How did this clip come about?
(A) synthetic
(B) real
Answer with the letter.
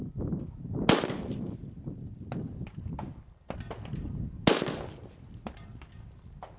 B